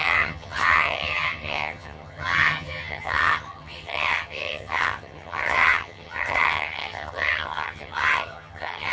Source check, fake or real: fake